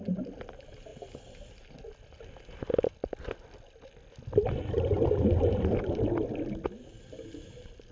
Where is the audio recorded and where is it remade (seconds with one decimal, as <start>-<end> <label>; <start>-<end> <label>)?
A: 0.0-7.9 recorded